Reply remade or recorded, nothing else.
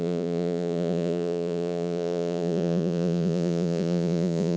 remade